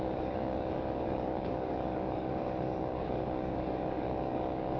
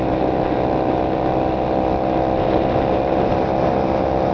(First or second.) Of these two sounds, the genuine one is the second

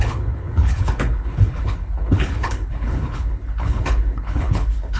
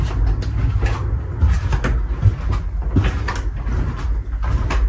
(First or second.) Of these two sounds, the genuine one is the second